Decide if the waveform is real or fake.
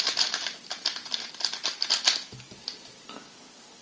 real